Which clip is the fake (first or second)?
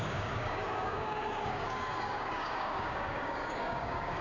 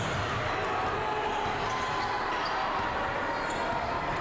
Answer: first